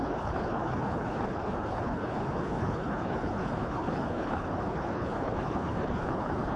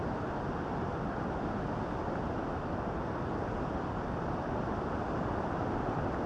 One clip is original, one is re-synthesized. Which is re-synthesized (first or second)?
first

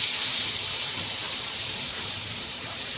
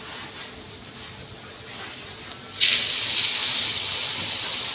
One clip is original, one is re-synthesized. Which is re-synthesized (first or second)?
first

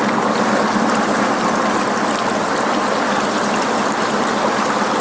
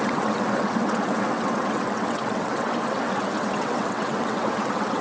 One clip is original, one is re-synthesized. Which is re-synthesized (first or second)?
second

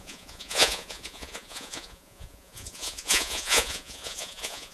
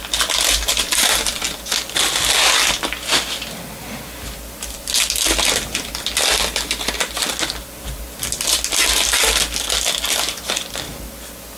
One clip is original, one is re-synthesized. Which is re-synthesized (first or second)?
first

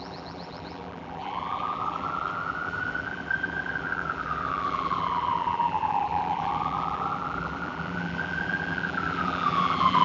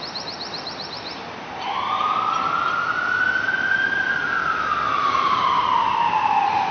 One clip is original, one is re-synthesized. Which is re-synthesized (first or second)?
first